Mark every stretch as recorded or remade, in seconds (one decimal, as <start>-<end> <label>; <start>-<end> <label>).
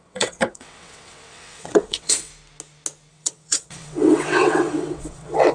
0.0-2.3 remade; 2.3-3.1 recorded; 3.1-5.5 remade